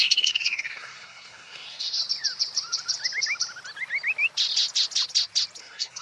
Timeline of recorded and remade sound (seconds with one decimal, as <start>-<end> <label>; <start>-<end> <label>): 0.0-2.0 remade; 2.0-5.6 recorded; 5.6-6.0 remade